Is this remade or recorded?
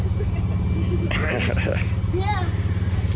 recorded